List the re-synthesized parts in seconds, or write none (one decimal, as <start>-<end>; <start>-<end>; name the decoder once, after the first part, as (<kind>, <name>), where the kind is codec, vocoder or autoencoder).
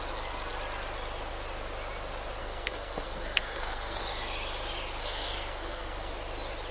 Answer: 2.4-4.0 (codec, SNAC); 5.0-6.1